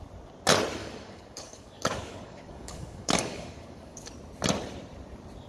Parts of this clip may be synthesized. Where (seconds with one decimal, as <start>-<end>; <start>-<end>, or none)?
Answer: 0.8-4.1

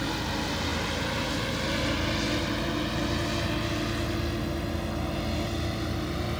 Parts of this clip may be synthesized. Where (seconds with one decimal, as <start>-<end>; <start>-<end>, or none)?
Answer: none

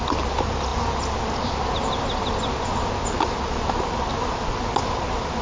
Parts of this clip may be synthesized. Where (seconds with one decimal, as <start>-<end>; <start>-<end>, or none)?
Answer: none

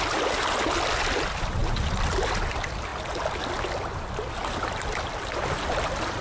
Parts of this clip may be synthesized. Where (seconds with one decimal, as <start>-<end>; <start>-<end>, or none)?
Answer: none

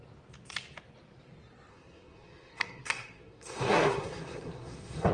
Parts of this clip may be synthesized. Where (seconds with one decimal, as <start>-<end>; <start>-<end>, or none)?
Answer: 1.7-5.1

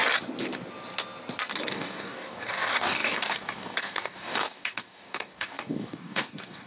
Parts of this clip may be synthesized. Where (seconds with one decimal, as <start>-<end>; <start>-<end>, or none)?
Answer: 1.7-6.7

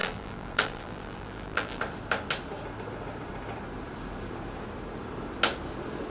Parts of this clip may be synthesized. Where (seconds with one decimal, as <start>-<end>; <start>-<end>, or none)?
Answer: 0.0-1.8